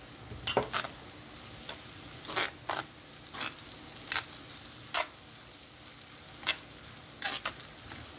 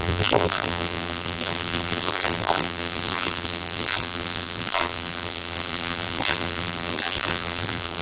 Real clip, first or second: first